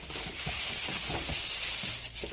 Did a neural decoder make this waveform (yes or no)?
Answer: yes